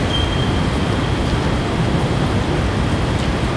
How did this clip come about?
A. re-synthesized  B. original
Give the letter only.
A